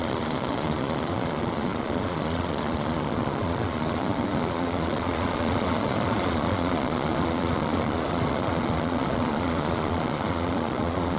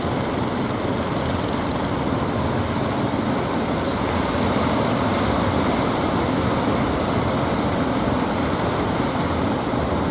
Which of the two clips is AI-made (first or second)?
first